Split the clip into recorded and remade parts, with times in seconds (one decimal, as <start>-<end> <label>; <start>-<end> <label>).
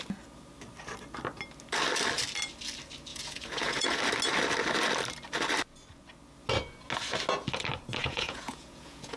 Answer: 0.0-3.1 recorded; 3.1-4.0 remade; 4.0-8.0 recorded; 8.0-9.2 remade